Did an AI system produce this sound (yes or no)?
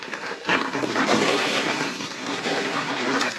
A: yes